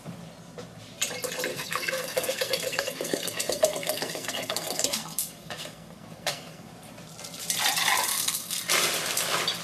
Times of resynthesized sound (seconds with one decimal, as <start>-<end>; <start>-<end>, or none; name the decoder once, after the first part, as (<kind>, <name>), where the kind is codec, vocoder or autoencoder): 1.5-6.7 (codec, SNAC); 8.1-8.6